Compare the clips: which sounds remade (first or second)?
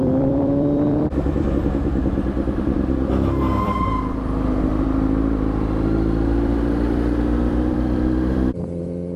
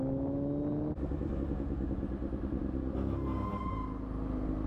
first